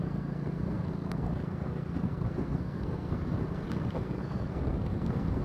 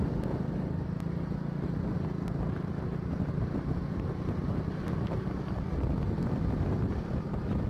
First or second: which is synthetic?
first